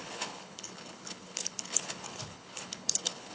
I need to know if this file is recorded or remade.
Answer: remade